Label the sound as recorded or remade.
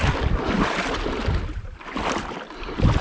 recorded